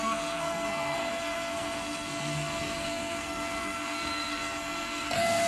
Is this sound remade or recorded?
remade